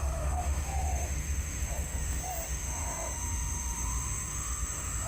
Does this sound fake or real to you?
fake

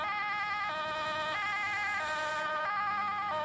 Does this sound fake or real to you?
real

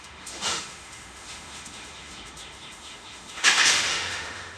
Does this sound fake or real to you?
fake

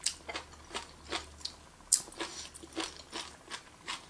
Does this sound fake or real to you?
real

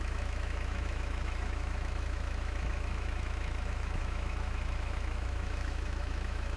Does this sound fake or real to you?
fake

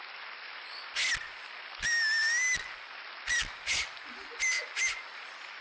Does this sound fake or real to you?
real